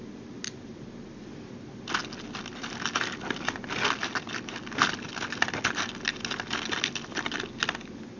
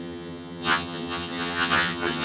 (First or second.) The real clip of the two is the first